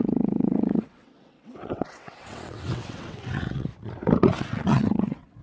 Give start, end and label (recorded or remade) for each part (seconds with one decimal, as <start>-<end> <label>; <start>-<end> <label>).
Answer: 0.0-3.7 remade; 3.7-4.4 recorded; 4.4-5.4 remade